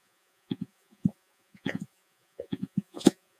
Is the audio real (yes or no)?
no